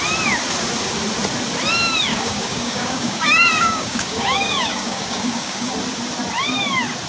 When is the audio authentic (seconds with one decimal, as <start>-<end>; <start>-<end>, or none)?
0.0-2.1; 5.7-7.1